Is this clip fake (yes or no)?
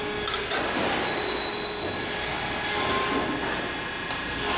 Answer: no